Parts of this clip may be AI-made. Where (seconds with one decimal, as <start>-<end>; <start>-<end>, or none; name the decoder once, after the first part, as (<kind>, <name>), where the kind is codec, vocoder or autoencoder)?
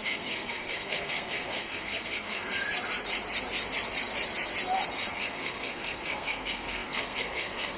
0.0-2.5 (codec, SNAC); 5.1-7.8